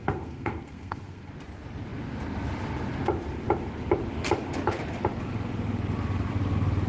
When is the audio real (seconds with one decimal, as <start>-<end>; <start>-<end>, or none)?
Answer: 1.3-6.9